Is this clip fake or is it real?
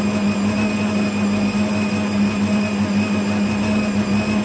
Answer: real